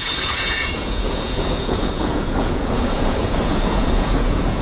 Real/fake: fake